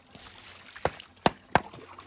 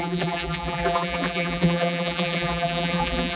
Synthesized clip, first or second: second